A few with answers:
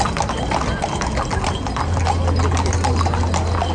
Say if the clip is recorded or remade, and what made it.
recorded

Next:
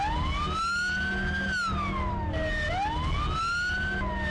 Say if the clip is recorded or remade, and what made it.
recorded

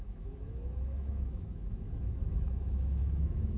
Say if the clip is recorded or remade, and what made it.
remade, autoencoder, DAC-VAE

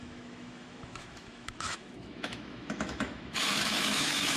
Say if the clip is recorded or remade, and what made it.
remade, autoencoder, DAC-VAE